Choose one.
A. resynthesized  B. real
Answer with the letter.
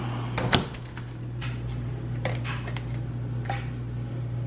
B